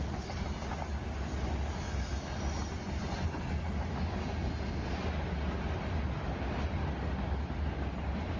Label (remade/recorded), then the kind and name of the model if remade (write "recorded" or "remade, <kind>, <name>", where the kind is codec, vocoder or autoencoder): recorded